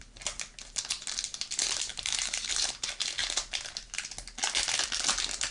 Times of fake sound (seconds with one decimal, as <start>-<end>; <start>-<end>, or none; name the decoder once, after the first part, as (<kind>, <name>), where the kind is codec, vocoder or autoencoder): 1.9-2.9 (vocoder, BigVGAN v2)